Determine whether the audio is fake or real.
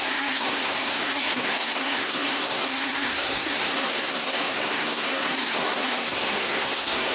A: fake